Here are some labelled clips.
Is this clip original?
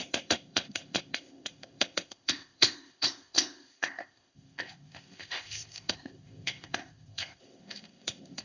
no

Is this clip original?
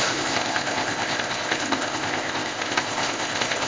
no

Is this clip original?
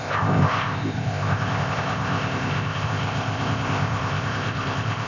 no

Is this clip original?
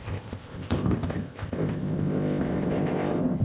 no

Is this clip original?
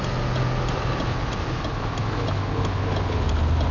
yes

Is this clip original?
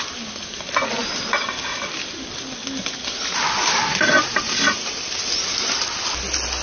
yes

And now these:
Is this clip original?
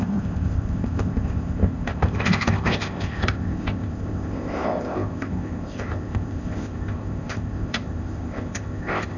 no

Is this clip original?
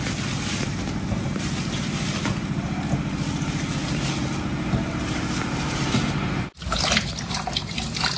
yes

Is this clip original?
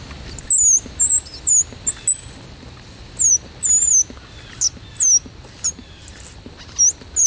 yes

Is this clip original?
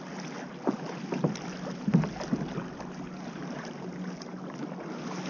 yes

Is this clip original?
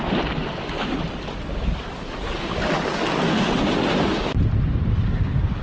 yes